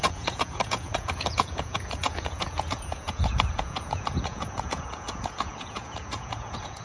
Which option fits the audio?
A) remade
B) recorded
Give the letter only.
A